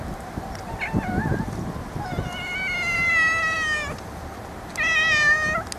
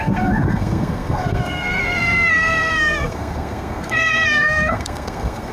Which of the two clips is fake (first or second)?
second